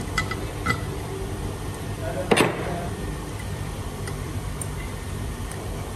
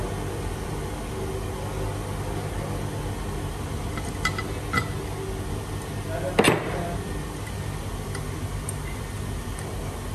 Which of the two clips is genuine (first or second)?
second